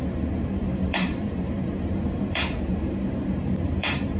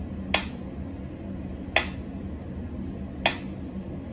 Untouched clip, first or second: second